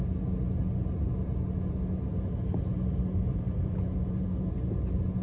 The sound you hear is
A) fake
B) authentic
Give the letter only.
B